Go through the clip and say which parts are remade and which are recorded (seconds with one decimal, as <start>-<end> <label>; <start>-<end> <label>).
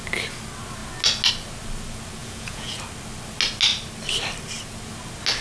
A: 0.0-2.2 recorded; 2.2-2.8 remade; 2.8-5.4 recorded